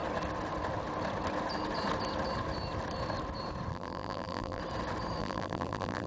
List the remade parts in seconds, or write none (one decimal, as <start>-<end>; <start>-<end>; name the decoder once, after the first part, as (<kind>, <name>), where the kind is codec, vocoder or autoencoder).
3.7-4.6 (vocoder, BigVGAN v2); 5.2-6.1